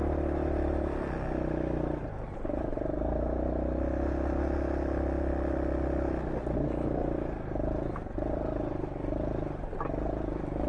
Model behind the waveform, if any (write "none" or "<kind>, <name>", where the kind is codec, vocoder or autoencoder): none